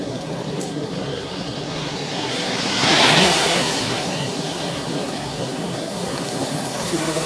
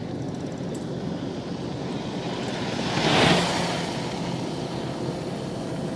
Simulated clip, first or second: first